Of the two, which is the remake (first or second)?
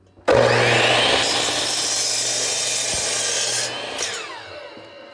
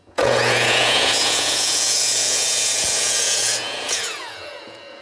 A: second